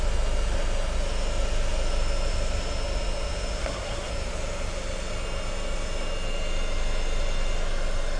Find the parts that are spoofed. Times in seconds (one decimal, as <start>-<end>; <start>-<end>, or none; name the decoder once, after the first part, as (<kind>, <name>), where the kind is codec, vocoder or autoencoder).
3.6-4.1 (codec, SNAC)